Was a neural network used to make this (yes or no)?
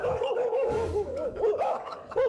yes